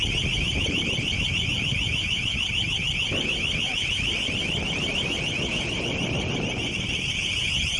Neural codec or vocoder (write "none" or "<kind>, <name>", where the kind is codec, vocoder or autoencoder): none